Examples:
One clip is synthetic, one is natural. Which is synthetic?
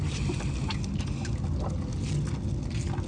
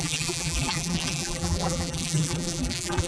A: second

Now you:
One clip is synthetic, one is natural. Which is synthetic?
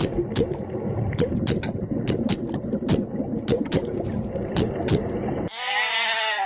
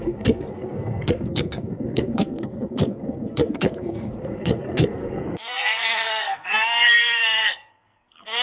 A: second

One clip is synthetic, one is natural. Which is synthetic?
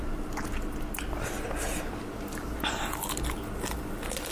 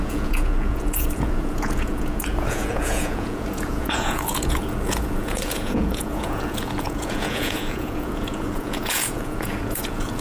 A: second